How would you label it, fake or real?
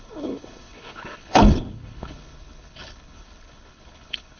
fake